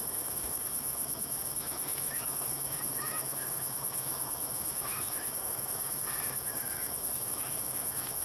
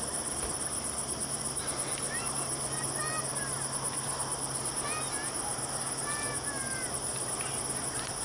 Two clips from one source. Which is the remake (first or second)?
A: first